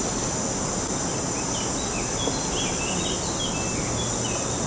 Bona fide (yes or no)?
yes